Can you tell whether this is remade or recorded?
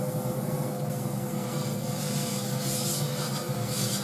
remade